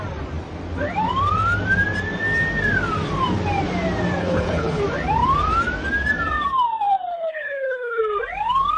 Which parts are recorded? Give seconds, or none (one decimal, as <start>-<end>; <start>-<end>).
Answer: 0.0-4.2; 4.8-7.1; 8.0-8.8